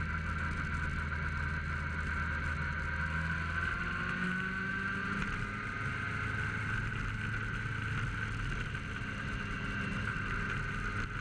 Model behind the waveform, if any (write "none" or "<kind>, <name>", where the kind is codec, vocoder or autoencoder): none